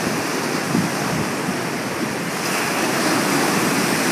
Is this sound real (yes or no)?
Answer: yes